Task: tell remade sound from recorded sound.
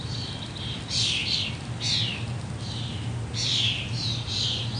recorded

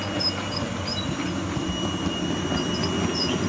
recorded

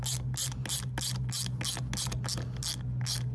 recorded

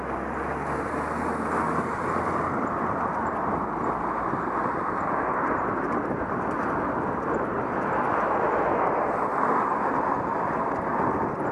recorded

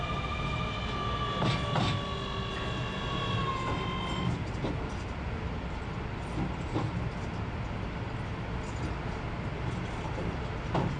recorded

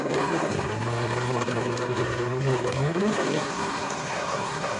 remade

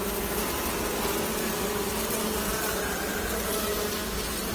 recorded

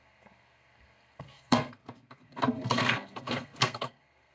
remade